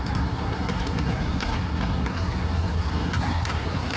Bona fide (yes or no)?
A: no